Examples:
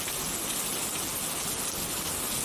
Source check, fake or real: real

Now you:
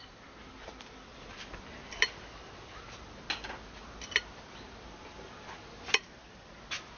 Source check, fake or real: real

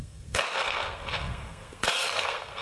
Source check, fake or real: fake